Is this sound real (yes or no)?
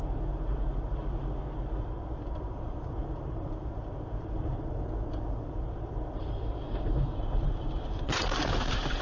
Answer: no